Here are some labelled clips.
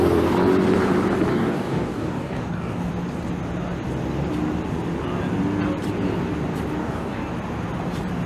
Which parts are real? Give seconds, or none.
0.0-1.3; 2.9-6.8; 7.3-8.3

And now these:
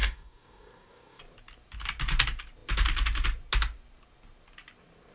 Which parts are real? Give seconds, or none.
1.2-5.1

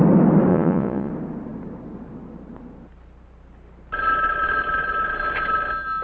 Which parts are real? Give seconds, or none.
0.0-0.5; 1.1-6.0

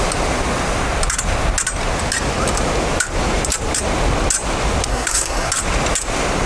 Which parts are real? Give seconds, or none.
0.0-4.9; 5.5-6.5

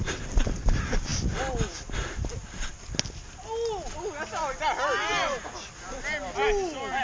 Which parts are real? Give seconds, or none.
0.0-7.0